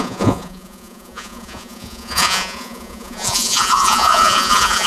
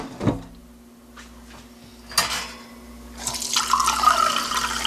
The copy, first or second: first